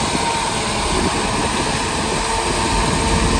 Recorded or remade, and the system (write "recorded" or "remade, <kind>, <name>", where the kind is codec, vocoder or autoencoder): recorded